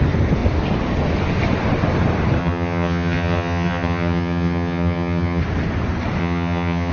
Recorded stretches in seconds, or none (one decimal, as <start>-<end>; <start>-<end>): 0.0-2.4; 5.4-6.2